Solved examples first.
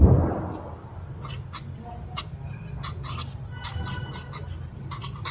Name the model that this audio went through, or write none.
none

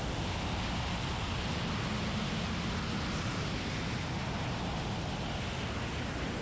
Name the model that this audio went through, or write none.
none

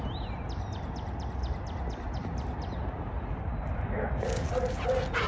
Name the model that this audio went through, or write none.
none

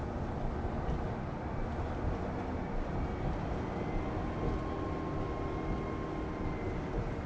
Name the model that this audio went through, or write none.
none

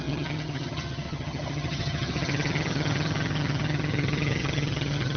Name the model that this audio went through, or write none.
vocoder, HiFi-GAN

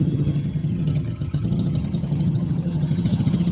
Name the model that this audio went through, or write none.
vocoder, HiFi-GAN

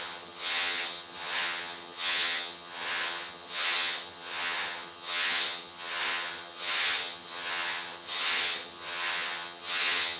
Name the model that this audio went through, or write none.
vocoder, HiFi-GAN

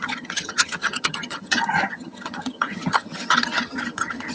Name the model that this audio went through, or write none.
vocoder, HiFi-GAN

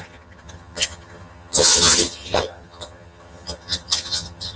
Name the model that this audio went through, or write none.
vocoder, HiFi-GAN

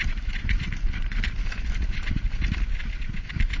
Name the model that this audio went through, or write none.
none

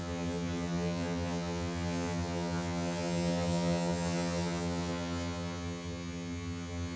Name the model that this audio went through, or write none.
vocoder, HiFi-GAN